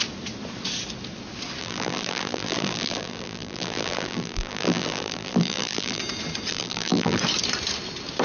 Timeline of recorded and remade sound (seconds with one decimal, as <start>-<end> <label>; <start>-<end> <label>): 0.0-1.6 recorded; 1.6-6.0 remade; 6.0-6.5 recorded; 6.5-7.2 remade; 7.2-8.2 recorded